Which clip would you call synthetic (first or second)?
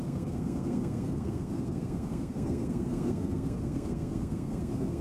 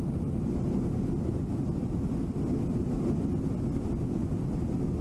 first